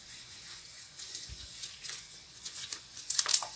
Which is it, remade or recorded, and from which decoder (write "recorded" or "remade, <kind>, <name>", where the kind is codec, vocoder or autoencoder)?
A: remade, vocoder, Vocos